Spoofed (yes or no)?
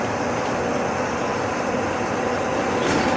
yes